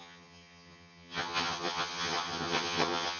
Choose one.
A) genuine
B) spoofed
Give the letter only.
B